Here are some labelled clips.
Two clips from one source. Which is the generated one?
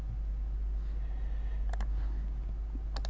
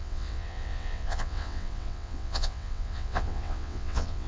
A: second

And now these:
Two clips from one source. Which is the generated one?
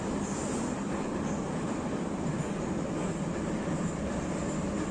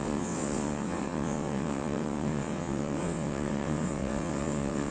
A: second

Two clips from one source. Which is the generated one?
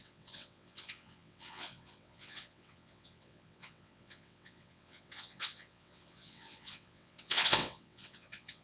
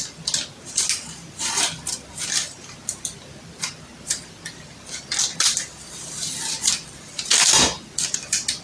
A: first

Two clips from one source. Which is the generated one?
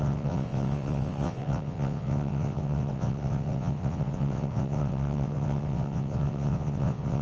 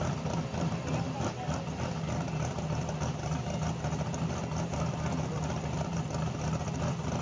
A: first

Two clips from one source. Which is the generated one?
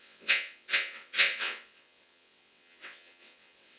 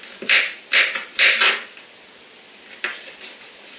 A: first